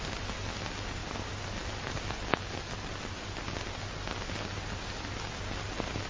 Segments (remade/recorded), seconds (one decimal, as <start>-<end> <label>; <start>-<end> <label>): 0.0-6.1 recorded